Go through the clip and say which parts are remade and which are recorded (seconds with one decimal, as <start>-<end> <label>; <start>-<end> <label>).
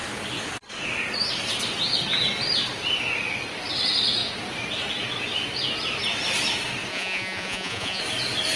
0.0-6.9 recorded; 6.9-8.0 remade; 8.0-8.6 recorded